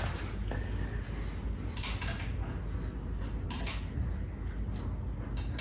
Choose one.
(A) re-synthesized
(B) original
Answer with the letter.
B